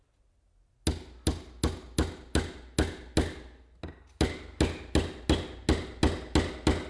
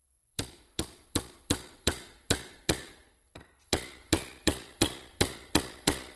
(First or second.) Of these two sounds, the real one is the first